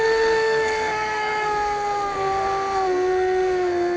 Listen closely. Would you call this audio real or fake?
fake